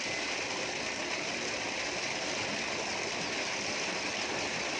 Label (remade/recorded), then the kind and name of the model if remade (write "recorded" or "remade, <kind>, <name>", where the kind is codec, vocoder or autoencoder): recorded